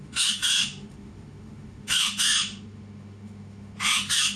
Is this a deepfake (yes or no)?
yes